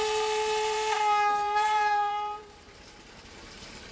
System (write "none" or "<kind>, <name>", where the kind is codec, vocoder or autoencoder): vocoder, BigVGAN v2